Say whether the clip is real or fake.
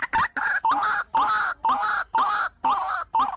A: real